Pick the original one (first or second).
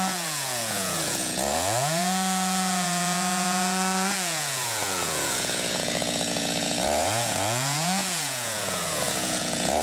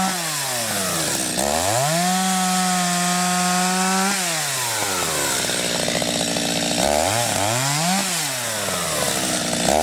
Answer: second